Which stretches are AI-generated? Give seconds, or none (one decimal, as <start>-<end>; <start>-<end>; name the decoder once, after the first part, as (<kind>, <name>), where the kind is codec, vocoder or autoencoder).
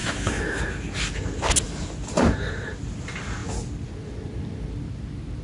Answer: 0.0-0.6 (autoencoder, DAC-VAE)